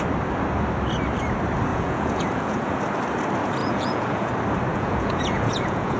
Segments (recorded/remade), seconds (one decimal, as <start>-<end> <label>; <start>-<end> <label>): 0.0-1.7 recorded; 1.7-2.8 remade; 2.8-3.6 recorded; 3.6-4.3 remade; 4.3-4.7 recorded; 4.7-6.0 remade